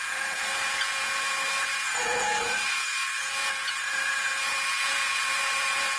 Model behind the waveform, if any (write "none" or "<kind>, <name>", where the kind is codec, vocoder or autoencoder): vocoder, Vocos